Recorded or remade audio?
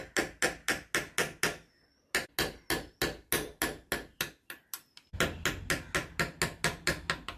recorded